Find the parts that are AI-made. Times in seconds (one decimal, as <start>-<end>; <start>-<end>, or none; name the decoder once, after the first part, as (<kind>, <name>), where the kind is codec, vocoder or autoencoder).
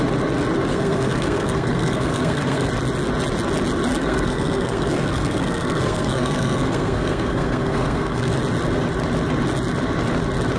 0.7-2.7 (codec, SNAC); 3.9-8.3